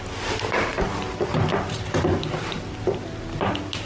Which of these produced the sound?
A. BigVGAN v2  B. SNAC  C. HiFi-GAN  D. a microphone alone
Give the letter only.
D